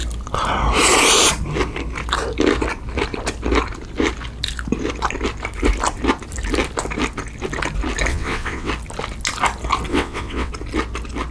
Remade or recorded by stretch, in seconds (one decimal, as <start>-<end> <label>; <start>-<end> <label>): 0.0-8.1 recorded; 8.1-8.7 remade; 8.7-9.9 recorded; 9.9-10.5 remade; 10.5-11.3 recorded